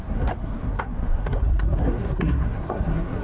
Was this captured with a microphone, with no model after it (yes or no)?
no